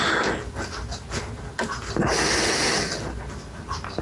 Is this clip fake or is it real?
real